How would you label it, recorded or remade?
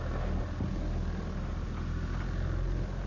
recorded